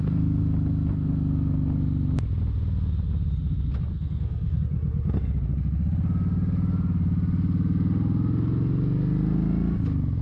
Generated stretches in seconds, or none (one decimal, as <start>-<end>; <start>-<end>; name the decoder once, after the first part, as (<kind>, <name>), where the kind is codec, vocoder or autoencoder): 3.9-4.6 (codec, SNAC)

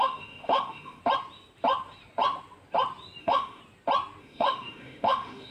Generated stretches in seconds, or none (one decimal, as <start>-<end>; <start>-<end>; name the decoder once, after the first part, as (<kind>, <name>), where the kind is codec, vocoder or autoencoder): 0.0-1.0 (autoencoder, DAC-VAE); 3.2-3.6; 4.2-5.5

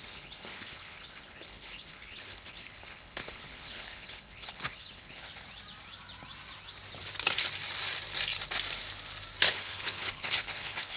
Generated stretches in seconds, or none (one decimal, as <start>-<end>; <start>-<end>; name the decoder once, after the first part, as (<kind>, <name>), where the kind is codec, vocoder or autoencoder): 0.0-5.3 (codec, HILCodec); 9.5-11.0